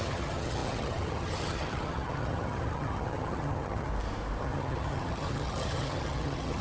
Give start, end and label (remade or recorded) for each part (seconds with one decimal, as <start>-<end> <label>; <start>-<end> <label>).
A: 0.0-3.9 remade; 3.9-4.4 recorded; 4.4-6.6 remade